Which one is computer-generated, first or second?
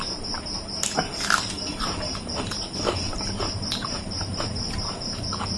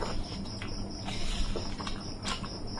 first